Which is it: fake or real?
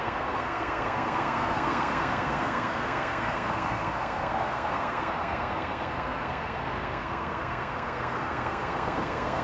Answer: fake